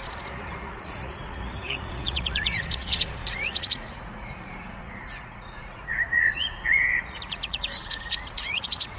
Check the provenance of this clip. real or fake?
fake